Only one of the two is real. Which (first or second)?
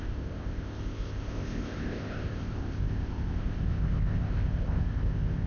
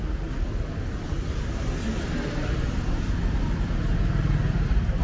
second